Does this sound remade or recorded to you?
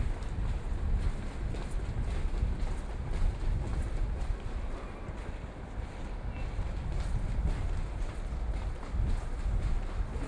recorded